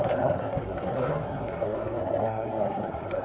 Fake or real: fake